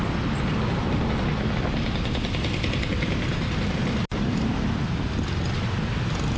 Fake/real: real